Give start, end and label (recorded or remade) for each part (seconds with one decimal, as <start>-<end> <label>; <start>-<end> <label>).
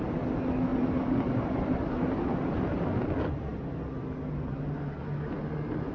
0.0-0.7 recorded; 0.7-2.8 remade; 2.8-5.9 recorded